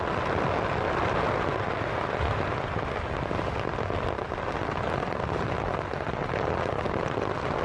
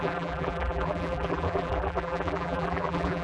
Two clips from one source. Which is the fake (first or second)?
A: second